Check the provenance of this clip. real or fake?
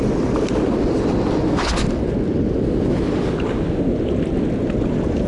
real